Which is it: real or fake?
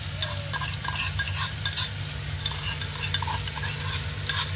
real